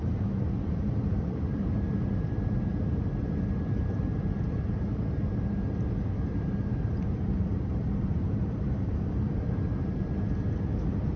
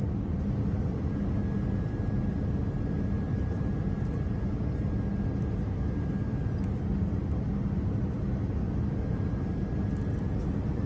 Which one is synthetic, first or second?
first